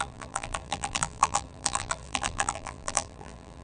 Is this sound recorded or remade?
remade